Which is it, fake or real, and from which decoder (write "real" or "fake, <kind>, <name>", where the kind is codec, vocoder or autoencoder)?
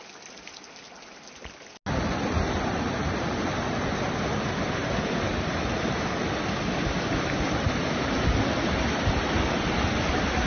real